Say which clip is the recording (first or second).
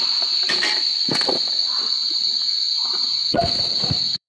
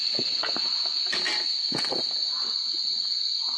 second